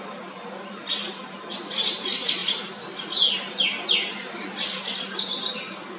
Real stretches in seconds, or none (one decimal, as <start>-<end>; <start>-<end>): 0.0-6.0